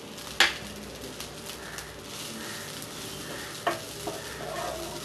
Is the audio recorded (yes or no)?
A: yes